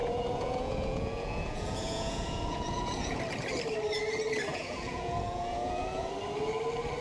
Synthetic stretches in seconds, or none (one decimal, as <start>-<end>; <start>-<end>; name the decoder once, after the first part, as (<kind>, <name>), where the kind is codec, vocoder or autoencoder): 0.0-3.2 (vocoder, Vocos); 4.5-6.1